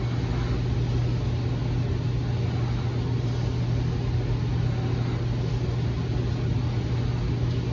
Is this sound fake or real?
real